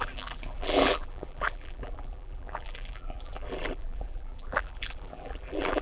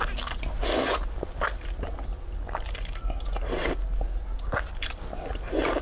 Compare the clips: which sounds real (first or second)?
second